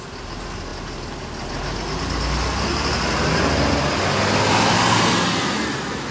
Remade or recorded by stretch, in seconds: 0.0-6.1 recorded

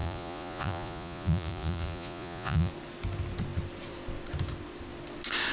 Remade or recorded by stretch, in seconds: 0.0-2.7 remade; 2.7-5.5 recorded

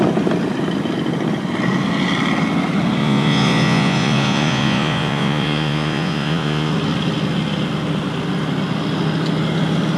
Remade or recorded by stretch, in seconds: 0.0-3.0 recorded; 3.0-6.7 remade; 6.7-10.0 recorded

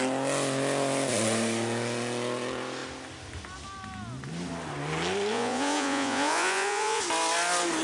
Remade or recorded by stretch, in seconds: 0.0-5.3 recorded; 5.3-7.0 remade; 7.0-7.8 recorded

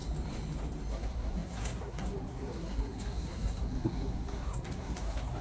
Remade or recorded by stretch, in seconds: 0.0-0.9 recorded; 0.9-5.4 remade

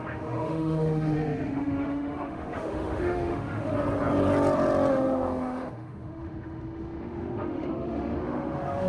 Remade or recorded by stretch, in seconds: 0.0-3.7 remade; 3.7-4.9 recorded; 4.9-8.9 remade